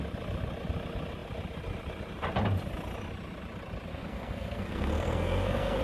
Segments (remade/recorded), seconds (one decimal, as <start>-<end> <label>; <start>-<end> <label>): 0.0-3.9 recorded; 3.9-5.8 remade